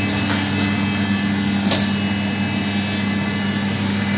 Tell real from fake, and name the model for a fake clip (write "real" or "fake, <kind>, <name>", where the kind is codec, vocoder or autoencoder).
real